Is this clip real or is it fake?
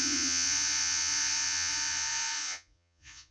fake